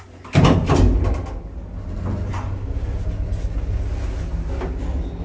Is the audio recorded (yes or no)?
yes